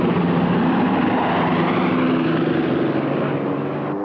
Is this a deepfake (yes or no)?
no